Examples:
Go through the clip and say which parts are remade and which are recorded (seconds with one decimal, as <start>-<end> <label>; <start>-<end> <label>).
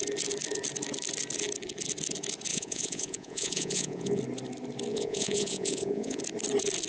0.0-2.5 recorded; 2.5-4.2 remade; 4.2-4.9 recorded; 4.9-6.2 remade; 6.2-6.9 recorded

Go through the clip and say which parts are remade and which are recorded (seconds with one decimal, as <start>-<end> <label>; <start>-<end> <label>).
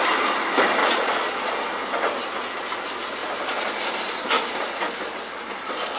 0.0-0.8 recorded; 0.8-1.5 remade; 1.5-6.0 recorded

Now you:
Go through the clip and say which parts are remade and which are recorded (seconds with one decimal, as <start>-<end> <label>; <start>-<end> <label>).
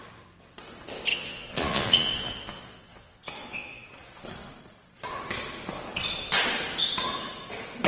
0.0-1.1 recorded; 1.1-3.9 remade; 3.9-7.9 recorded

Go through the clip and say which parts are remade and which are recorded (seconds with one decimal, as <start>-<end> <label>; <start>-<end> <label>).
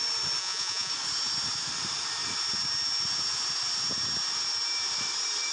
0.0-0.4 recorded; 0.4-0.9 remade; 0.9-5.5 recorded